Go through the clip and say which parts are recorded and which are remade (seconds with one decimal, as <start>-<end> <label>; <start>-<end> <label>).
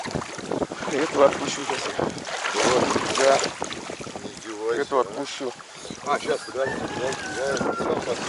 0.0-1.6 remade; 1.6-5.5 recorded; 5.5-6.7 remade; 6.7-7.6 recorded; 7.6-8.3 remade